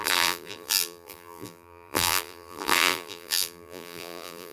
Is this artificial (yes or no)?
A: yes